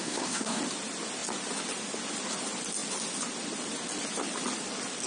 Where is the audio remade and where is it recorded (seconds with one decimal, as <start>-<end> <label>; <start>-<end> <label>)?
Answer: 0.0-0.6 remade; 0.6-5.1 recorded